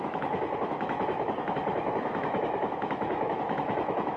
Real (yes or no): no